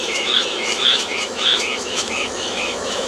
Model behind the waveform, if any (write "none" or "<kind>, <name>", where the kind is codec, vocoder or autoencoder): autoencoder, DAC-VAE